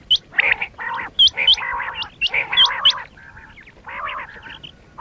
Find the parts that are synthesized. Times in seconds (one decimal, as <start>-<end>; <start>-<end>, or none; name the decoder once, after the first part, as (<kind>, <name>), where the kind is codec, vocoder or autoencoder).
none